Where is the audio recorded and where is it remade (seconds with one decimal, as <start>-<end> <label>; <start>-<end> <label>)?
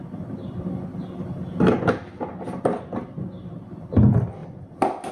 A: 0.0-5.1 recorded